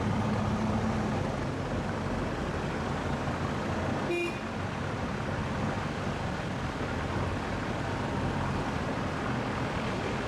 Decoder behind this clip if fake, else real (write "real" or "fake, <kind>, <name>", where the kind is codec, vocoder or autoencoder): real